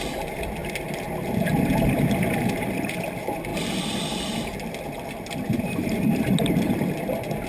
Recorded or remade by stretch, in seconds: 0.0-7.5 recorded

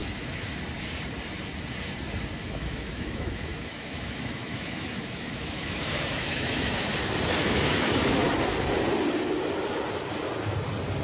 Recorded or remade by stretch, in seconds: 0.0-0.6 remade; 0.6-2.4 recorded; 2.4-6.9 remade; 6.9-7.4 recorded; 7.4-8.3 remade; 8.3-11.0 recorded

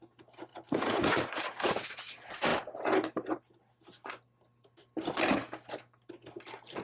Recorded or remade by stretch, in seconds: 0.0-0.5 recorded; 0.5-2.1 remade; 2.1-6.8 recorded

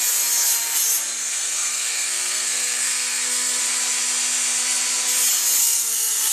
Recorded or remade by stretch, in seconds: 0.0-1.2 recorded; 1.2-3.6 remade; 3.6-5.6 recorded; 5.6-6.3 remade

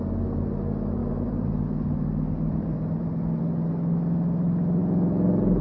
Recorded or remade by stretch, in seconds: 0.0-1.0 recorded; 1.0-3.4 remade; 3.4-5.6 recorded

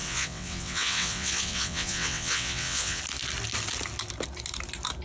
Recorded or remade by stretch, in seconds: 0.0-3.0 remade; 3.0-5.0 recorded

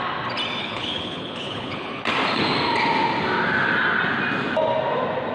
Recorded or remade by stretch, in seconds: 0.0-0.6 recorded; 0.6-2.0 remade; 2.0-5.3 recorded